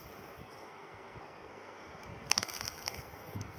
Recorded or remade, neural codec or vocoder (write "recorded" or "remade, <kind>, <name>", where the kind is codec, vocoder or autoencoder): remade, codec, SNAC